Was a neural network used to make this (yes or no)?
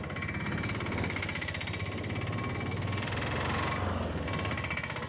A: no